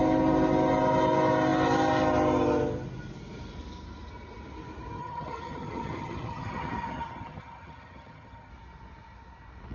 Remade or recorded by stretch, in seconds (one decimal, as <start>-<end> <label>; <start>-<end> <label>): 0.0-5.0 recorded; 5.0-8.5 remade; 8.5-9.7 recorded